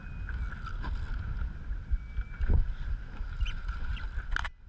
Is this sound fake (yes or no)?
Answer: no